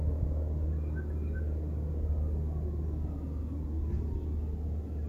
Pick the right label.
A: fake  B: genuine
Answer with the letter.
B